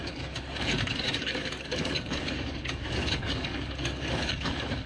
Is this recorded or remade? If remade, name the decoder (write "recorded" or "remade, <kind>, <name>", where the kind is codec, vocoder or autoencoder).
remade, codec, DAC